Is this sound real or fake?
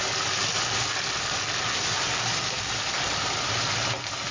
fake